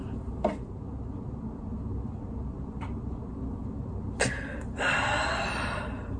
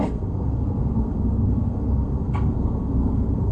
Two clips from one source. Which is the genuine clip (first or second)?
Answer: first